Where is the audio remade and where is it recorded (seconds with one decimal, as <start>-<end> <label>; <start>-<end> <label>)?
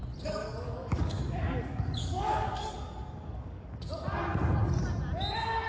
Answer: 0.0-0.4 recorded; 0.4-3.8 remade; 3.8-5.7 recorded